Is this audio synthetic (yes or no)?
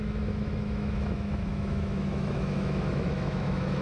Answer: yes